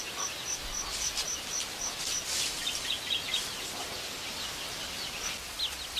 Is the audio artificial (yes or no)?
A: no